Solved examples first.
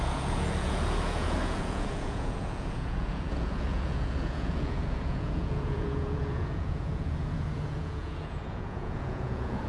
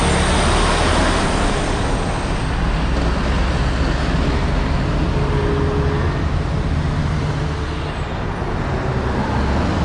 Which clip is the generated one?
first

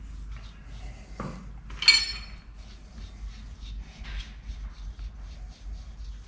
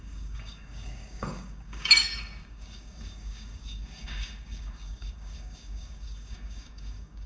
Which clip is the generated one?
second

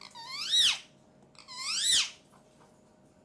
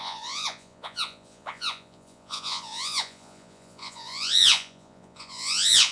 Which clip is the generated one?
second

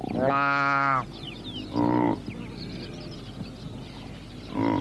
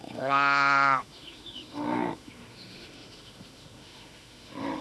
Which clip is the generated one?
second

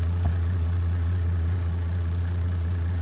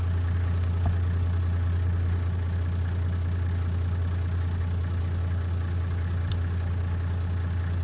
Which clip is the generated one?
first